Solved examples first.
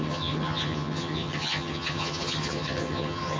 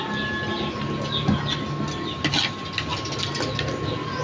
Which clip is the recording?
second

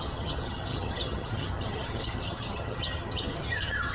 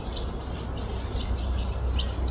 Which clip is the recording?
second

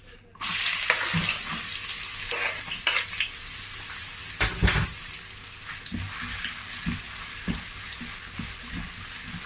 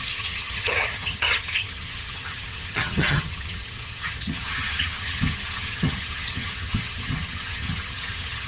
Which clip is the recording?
first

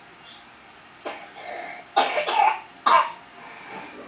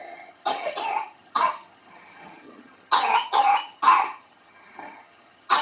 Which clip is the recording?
first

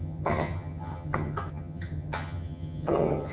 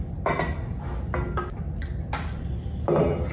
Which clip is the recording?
second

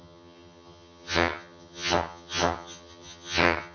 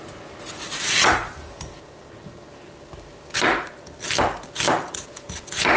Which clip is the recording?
second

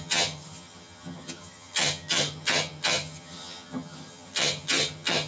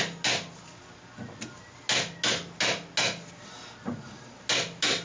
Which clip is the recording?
second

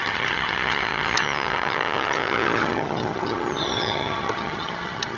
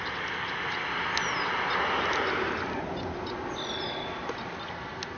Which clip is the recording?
second